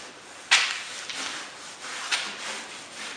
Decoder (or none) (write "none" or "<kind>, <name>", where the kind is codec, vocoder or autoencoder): none